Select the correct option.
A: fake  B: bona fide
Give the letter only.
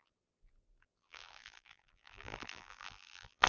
A